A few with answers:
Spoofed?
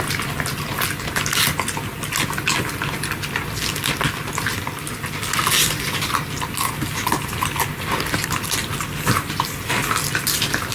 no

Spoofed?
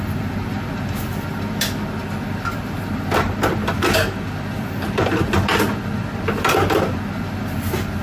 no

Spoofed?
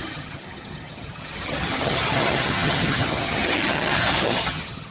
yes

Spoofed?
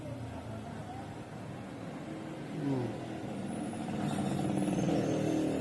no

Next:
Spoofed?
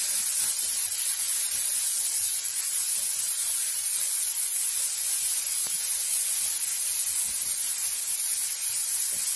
no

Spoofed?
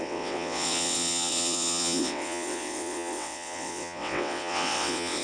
yes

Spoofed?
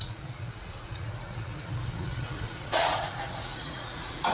yes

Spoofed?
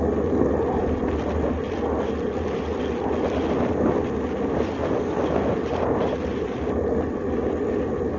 no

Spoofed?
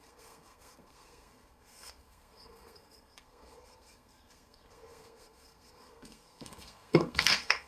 yes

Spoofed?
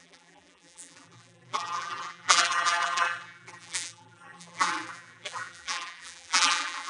yes